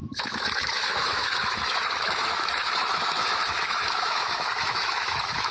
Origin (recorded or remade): remade